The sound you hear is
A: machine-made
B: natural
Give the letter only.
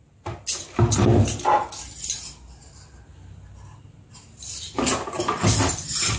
B